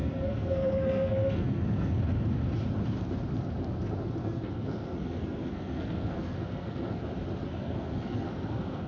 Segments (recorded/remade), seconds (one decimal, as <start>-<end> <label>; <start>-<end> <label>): 0.0-2.0 remade; 2.0-4.2 recorded; 4.2-7.0 remade; 7.0-7.4 recorded; 7.4-8.9 remade